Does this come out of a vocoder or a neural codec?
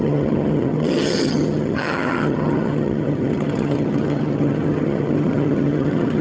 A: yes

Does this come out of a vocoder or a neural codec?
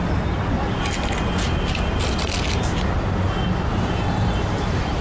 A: no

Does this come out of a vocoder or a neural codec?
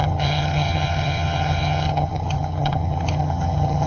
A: yes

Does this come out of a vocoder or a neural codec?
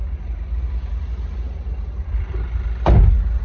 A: no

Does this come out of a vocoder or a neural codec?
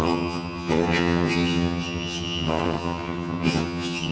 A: yes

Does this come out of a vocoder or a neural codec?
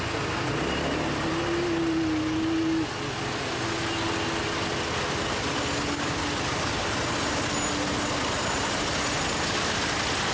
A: no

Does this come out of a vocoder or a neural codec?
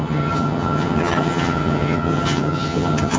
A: yes